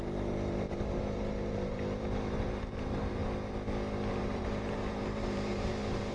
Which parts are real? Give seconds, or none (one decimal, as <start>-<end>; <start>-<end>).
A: 3.2-4.1